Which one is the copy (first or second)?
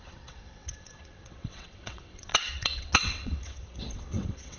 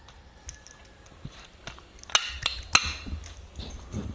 first